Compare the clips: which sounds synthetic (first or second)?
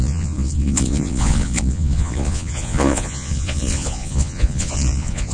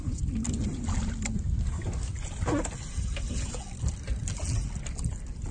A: first